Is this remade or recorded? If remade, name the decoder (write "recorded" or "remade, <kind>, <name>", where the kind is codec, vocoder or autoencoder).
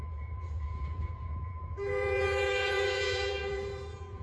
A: remade, vocoder, Vocos